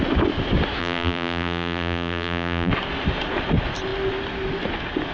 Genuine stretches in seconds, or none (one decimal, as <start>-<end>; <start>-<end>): 0.0-0.8; 2.7-5.1